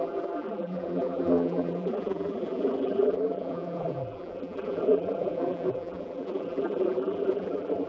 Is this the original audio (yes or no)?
no